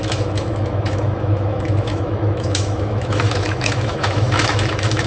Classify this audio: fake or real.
fake